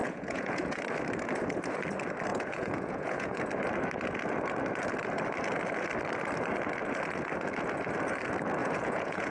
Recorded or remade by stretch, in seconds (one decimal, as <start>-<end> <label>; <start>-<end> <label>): 0.0-0.8 remade; 0.8-2.3 recorded; 2.3-3.4 remade; 3.4-8.6 recorded; 8.6-9.3 remade